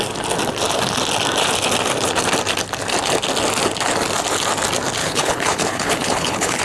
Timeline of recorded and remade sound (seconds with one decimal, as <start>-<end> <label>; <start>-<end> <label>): 0.0-5.0 recorded; 5.0-6.6 remade